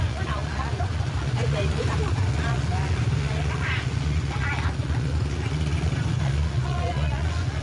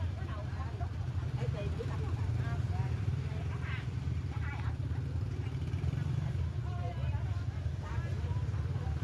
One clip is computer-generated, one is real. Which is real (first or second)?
second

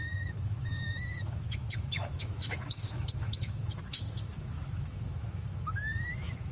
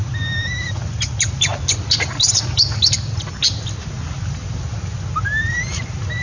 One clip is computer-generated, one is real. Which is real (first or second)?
second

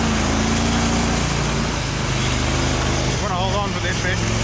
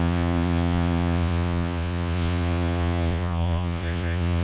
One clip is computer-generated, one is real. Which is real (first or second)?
first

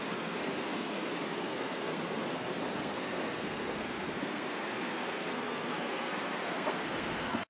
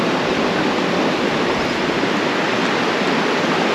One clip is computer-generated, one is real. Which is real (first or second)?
second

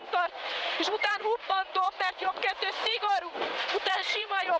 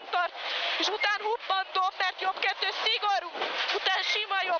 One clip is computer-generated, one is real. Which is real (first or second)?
second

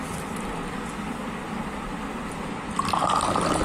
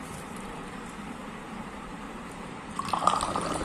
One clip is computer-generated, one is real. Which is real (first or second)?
first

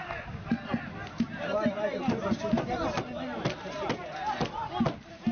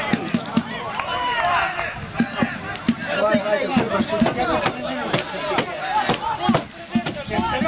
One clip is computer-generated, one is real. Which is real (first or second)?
second